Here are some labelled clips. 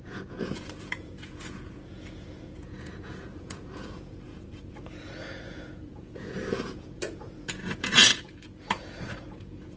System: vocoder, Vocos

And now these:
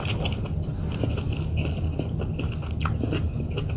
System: none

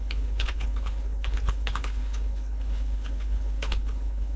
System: codec, HILCodec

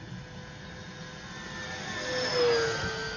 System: none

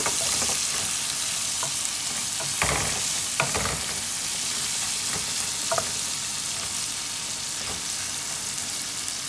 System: none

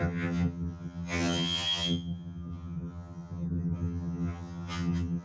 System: vocoder, HiFi-GAN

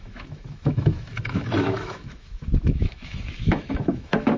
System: autoencoder, DAC-VAE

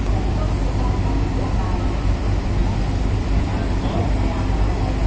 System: none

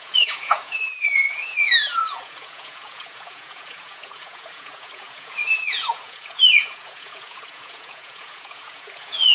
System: vocoder, Vocos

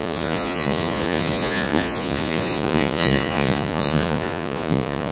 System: vocoder, Vocos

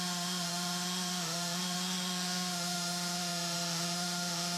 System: autoencoder, DAC-VAE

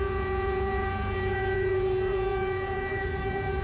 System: vocoder, Vocos